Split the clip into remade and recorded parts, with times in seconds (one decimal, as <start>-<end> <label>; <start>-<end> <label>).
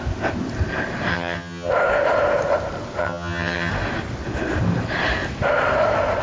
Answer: 0.0-1.1 recorded; 1.1-1.7 remade; 1.7-3.0 recorded; 3.0-3.7 remade; 3.7-6.2 recorded